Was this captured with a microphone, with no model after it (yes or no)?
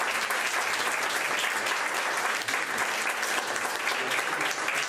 yes